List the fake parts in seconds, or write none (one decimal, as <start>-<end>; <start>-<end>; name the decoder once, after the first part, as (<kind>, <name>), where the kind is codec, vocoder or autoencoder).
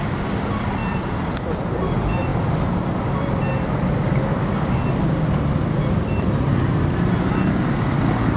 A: none